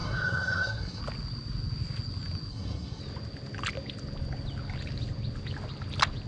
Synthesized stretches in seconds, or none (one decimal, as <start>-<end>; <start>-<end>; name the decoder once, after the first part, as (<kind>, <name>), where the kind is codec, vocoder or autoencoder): 0.0-1.0 (codec, SNAC); 2.5-3.0

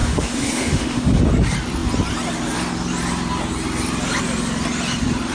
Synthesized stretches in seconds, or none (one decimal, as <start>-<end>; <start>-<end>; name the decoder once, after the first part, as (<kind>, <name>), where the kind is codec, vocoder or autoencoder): 0.0-1.2 (autoencoder, DAC-VAE)

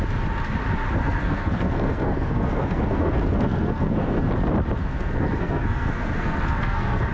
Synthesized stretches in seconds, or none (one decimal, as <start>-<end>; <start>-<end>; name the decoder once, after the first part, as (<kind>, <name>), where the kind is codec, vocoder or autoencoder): 1.0-4.3 (codec, SNAC); 4.8-7.1

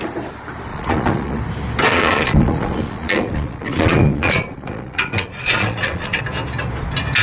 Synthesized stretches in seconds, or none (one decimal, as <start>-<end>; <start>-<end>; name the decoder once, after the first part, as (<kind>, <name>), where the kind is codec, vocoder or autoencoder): 0.7-1.4 (vocoder, Vocos); 1.9-6.2

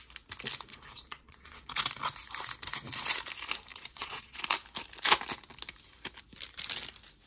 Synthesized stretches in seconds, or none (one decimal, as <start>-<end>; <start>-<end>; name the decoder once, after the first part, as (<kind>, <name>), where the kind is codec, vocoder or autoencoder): 0.7-1.8 (vocoder, Vocos); 3.7-4.4

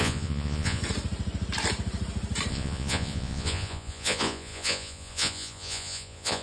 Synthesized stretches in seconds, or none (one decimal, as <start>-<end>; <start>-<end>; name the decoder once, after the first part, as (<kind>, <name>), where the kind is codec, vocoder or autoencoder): 0.0-0.8 (vocoder, Vocos); 2.5-6.4

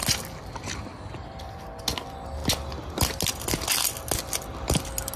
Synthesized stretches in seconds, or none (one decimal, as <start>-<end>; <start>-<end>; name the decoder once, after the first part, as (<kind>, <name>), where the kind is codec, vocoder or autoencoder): none